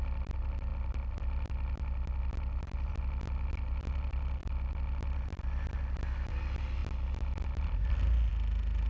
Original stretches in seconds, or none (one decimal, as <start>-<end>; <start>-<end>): 0.0-8.9